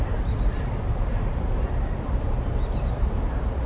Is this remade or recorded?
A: recorded